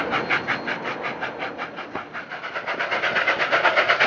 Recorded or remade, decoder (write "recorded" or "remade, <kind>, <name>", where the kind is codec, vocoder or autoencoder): recorded